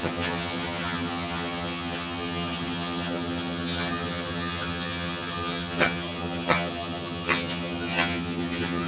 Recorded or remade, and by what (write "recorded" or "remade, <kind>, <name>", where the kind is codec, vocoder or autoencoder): remade, vocoder, HiFi-GAN